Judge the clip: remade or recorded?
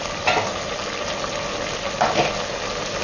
recorded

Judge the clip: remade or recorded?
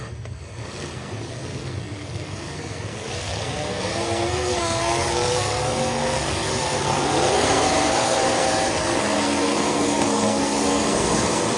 remade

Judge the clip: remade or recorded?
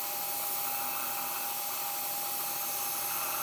recorded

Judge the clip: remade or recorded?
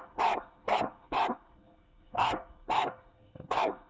remade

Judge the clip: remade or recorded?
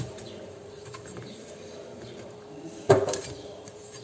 remade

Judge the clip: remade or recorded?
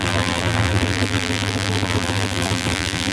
remade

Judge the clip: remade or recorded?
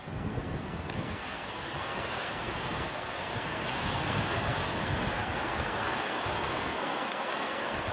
remade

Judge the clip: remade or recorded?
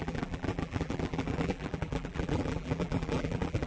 remade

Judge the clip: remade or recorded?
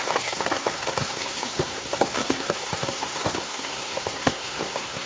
remade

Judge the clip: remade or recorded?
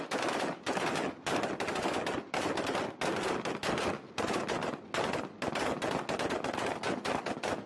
recorded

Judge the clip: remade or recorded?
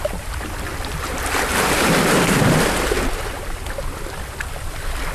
recorded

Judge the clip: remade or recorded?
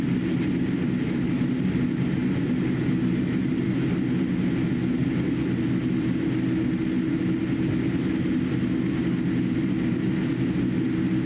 recorded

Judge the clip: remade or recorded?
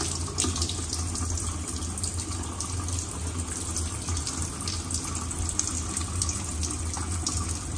recorded